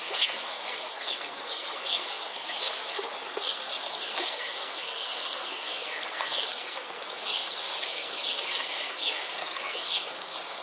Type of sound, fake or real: fake